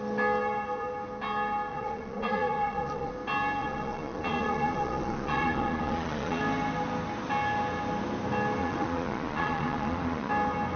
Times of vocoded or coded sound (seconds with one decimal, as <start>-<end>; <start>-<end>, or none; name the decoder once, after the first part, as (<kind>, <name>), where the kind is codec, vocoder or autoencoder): 1.7-3.1 (vocoder, Vocos); 3.6-6.4; 8.6-10.3